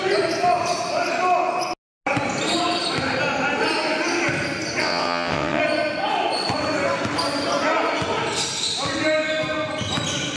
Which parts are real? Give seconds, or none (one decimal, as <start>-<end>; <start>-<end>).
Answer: 0.0-4.8; 5.6-10.4